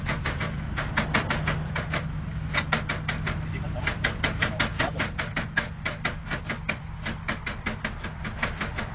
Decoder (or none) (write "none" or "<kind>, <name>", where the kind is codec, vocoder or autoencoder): none